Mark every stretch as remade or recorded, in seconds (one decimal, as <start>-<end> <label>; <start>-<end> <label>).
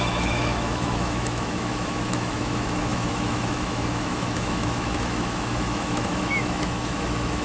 0.0-7.4 remade